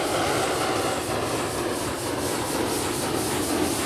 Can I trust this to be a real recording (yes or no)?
yes